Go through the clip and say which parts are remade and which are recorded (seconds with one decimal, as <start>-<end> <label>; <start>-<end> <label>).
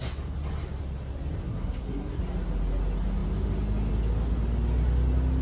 0.0-1.5 recorded; 1.5-2.2 remade; 2.2-5.4 recorded